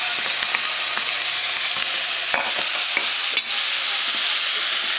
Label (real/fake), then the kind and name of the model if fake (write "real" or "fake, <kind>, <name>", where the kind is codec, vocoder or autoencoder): real